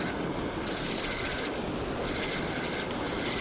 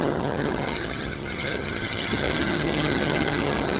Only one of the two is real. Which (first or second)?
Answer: first